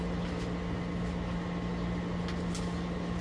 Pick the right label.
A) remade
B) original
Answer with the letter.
B